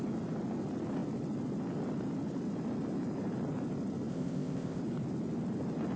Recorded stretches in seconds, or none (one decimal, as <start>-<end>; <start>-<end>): 0.0-4.1; 4.8-6.0